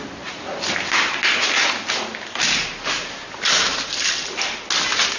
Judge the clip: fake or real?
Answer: real